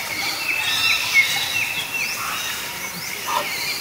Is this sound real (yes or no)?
yes